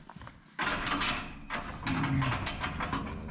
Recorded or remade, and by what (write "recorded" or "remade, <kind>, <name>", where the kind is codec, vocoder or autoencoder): recorded